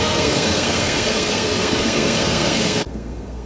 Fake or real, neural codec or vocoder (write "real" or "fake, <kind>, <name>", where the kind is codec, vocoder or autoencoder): fake, codec, SNAC